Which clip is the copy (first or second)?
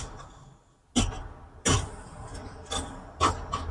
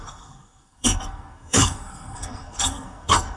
second